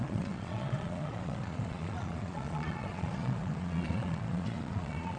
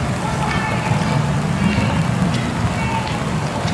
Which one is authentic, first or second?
second